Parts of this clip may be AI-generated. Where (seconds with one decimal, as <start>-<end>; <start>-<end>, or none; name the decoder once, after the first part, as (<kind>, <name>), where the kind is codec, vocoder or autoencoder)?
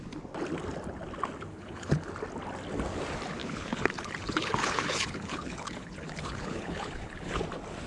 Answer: 1.5-2.1 (codec, HILCodec); 3.4-7.4